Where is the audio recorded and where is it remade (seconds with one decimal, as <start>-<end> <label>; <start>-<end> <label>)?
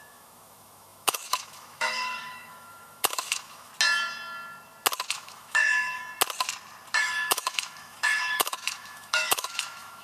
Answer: 0.0-3.7 remade; 3.7-5.1 recorded; 5.1-6.0 remade; 6.0-7.0 recorded; 7.0-10.0 remade